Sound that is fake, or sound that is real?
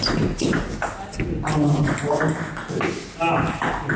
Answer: real